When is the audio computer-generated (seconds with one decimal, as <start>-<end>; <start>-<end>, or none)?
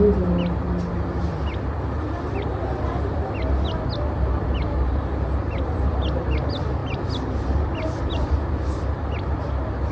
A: none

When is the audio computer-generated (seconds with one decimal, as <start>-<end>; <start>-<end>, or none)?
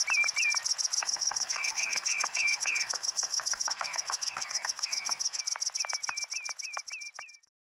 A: 1.0-5.4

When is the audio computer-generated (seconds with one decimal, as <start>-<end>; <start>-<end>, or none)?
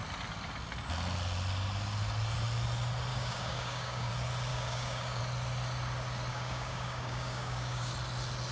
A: 3.1-4.1; 4.5-5.2; 6.3-7.9